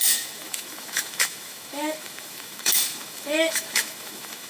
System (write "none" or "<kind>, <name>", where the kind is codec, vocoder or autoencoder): autoencoder, DAC-VAE